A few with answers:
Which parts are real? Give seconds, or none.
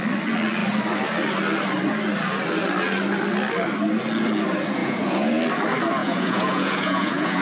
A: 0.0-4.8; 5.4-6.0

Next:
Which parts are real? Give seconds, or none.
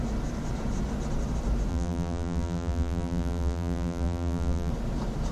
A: 0.0-1.7; 4.7-5.3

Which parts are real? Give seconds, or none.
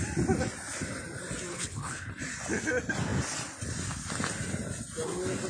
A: 0.0-1.5; 2.1-5.5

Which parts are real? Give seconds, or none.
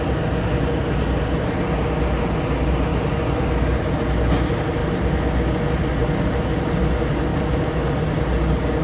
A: 0.0-8.8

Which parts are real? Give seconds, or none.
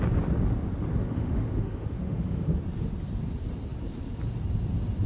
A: 0.0-0.9; 2.5-5.1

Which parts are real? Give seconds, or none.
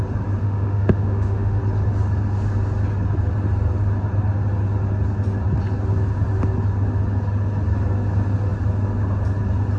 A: 0.0-0.4; 1.6-9.8